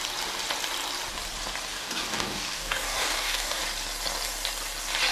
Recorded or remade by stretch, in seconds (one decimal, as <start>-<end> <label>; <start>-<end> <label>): 0.0-1.7 recorded; 1.7-3.6 remade; 3.6-5.1 recorded